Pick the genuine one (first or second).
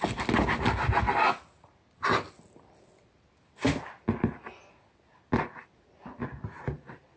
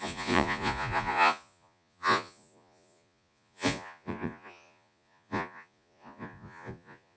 first